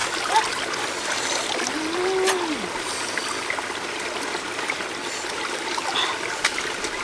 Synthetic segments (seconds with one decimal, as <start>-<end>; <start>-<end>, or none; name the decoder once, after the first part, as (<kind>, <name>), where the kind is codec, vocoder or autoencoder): none